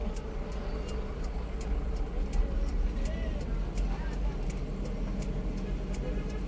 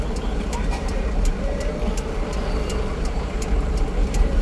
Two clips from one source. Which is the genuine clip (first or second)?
first